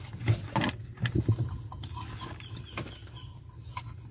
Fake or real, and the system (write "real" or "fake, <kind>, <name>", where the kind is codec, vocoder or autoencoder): real